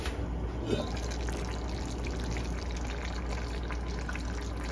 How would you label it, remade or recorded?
recorded